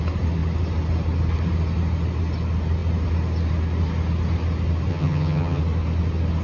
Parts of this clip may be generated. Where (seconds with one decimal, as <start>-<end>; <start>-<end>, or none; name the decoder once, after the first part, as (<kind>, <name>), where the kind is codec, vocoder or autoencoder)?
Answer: 4.9-5.6 (vocoder, HiFi-GAN)